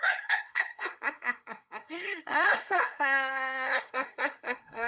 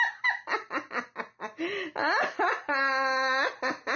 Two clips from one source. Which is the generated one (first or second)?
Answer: first